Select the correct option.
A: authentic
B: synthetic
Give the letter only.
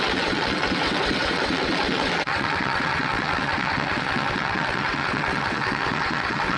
B